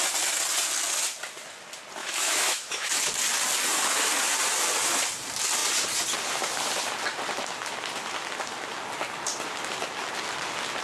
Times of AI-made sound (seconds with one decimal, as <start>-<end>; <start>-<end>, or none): 2.0-3.0